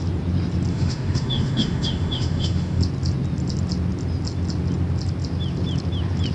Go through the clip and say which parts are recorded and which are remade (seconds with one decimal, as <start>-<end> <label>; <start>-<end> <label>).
0.0-0.7 recorded; 0.7-2.8 remade; 2.8-6.3 recorded